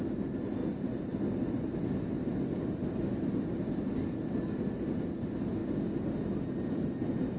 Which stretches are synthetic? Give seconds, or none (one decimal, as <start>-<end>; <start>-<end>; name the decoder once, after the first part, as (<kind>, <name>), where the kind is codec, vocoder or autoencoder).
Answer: none